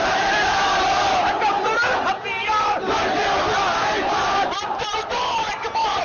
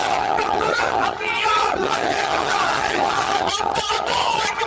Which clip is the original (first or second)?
first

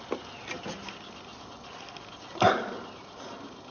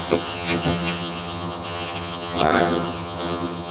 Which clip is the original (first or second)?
first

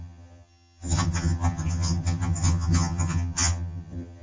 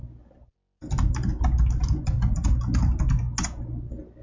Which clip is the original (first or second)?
second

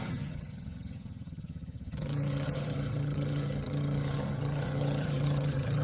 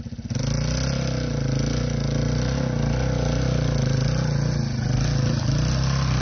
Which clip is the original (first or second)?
second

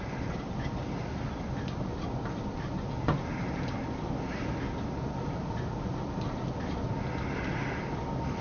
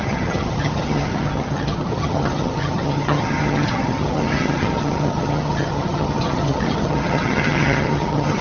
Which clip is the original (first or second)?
first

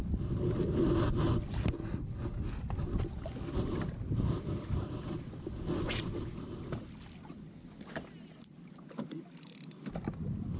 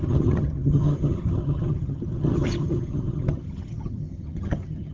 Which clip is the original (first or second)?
first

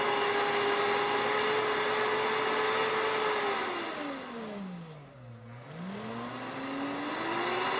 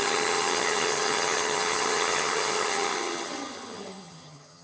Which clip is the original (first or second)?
first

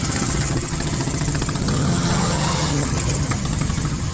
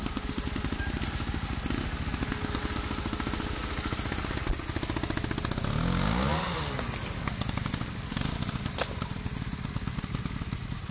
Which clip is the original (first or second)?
second